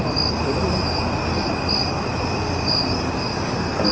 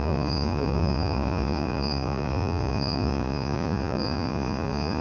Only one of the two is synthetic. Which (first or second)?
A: second